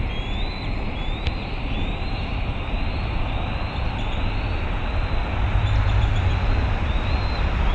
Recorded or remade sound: recorded